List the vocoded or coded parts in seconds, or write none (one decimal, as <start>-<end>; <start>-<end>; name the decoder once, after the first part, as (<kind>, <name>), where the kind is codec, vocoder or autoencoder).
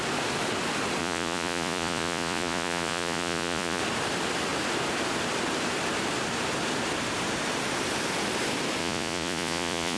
1.0-3.8 (vocoder, Vocos); 8.8-10.0